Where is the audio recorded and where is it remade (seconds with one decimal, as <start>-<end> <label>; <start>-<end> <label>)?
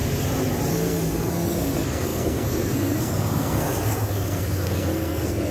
0.0-0.7 recorded; 0.7-5.5 remade